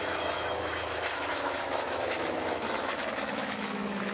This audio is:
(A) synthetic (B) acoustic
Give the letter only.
A